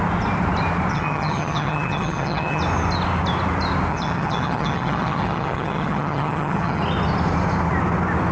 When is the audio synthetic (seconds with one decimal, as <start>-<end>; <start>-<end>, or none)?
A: 0.9-2.6; 3.9-6.8